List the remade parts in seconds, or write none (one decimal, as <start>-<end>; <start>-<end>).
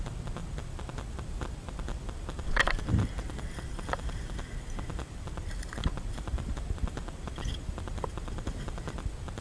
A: none